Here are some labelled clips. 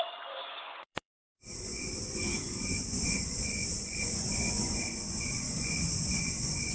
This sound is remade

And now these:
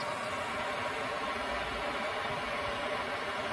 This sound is recorded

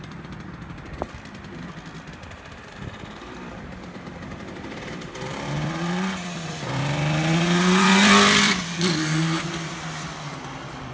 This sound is remade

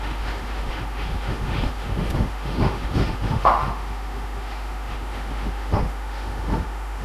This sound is remade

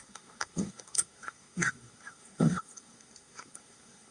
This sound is remade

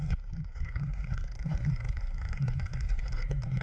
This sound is remade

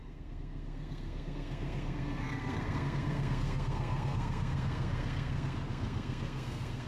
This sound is remade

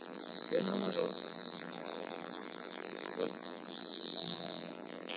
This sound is remade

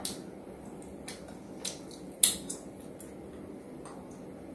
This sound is recorded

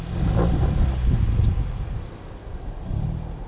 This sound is recorded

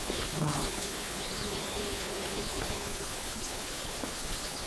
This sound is remade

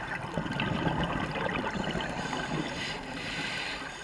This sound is remade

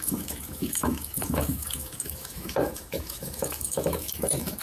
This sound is remade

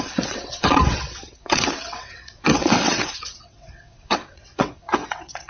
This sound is remade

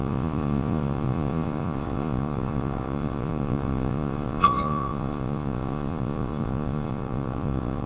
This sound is remade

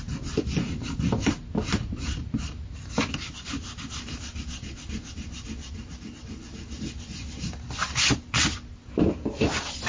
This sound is recorded